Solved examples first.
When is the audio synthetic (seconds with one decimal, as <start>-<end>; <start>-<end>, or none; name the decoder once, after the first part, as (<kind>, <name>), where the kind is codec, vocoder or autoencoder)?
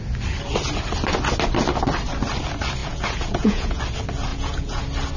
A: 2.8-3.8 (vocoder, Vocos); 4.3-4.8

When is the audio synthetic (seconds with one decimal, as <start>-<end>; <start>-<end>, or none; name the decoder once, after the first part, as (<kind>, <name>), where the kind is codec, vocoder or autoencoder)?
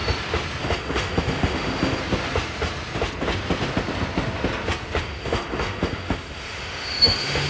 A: 0.6-2.0 (autoencoder, DAC-VAE); 5.0-7.5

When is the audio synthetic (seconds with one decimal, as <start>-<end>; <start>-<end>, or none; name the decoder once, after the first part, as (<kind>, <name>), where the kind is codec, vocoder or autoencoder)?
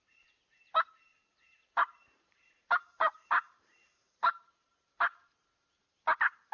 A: 1.3-5.0 (vocoder, BigVGAN v2)